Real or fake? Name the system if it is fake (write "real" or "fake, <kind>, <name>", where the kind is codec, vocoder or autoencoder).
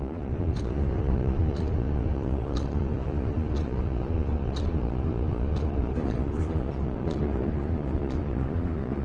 fake, vocoder, Vocos